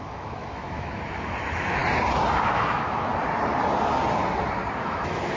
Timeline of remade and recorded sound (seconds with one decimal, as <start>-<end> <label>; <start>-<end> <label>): 0.0-1.8 remade; 1.8-2.4 recorded; 2.4-3.1 remade; 3.1-4.8 recorded; 4.8-5.4 remade